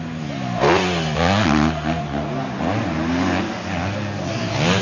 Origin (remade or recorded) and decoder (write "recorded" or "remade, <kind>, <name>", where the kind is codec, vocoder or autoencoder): recorded